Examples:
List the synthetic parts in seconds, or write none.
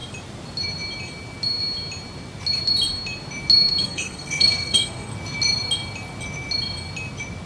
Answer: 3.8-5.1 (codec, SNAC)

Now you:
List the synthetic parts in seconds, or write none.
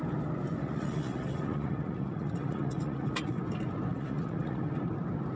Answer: 0.6-3.4 (vocoder, Vocos); 3.9-4.6